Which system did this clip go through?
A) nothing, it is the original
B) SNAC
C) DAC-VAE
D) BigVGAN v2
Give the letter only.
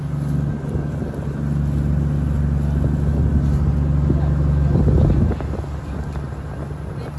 A